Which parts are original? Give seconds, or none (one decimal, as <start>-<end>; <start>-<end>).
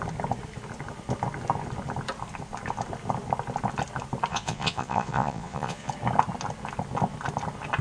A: 0.0-4.3; 5.9-7.8